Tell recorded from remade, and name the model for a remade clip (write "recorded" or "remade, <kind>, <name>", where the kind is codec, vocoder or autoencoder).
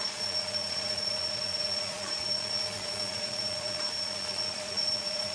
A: remade, vocoder, Vocos